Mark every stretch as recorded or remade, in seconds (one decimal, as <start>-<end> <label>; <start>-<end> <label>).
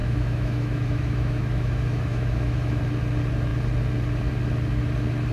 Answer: 0.0-2.8 remade; 2.8-5.3 recorded